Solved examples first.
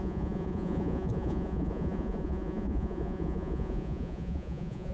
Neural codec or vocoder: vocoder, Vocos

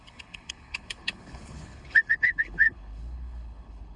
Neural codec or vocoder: codec, HILCodec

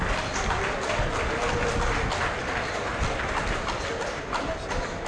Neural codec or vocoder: none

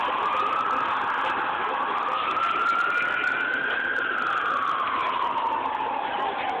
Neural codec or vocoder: none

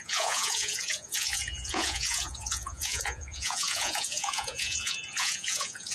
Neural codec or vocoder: vocoder, Vocos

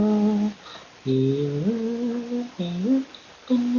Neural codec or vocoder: none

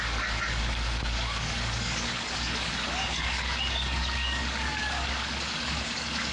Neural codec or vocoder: codec, DAC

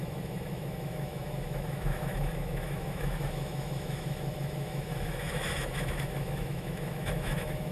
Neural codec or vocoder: autoencoder, DAC-VAE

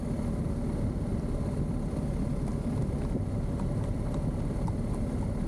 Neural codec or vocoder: none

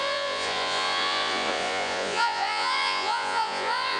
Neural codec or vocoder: vocoder, Vocos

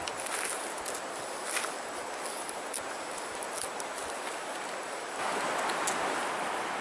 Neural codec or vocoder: none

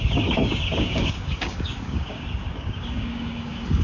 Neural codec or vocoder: codec, DAC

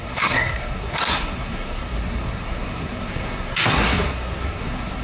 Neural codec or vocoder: codec, SNAC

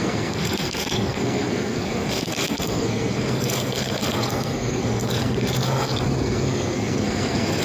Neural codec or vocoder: codec, SNAC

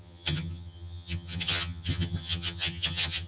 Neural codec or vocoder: vocoder, HiFi-GAN